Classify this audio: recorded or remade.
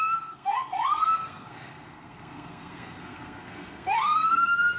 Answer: remade